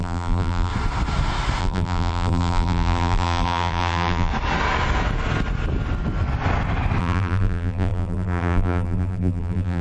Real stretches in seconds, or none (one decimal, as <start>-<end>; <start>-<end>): 0.7-1.6; 4.3-7.0